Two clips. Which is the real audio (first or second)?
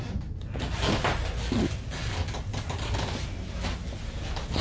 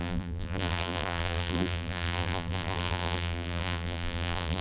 first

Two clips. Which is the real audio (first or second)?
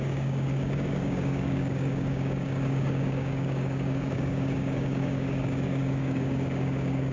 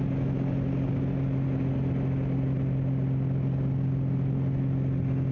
second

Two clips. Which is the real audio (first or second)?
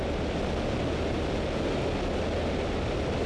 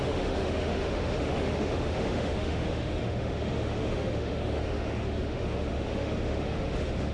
first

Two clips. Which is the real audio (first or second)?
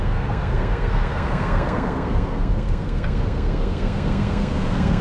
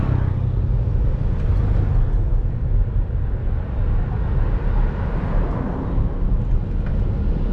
second